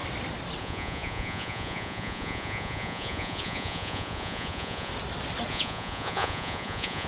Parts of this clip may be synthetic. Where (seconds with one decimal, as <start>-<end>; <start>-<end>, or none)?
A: 0.6-4.9; 5.5-7.1